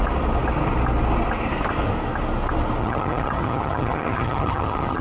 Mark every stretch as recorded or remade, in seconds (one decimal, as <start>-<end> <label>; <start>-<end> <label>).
0.0-2.8 recorded; 2.8-5.0 remade